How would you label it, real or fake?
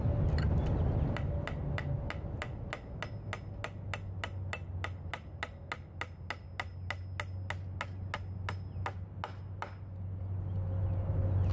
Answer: real